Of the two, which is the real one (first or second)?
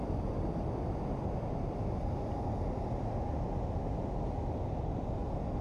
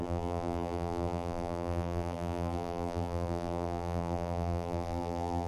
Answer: first